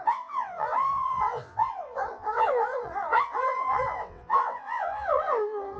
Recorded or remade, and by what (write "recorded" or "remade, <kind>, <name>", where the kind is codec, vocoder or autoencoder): remade, vocoder, WaveNeXt